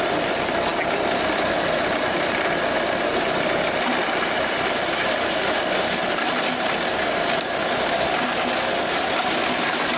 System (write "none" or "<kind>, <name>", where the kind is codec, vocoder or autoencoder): none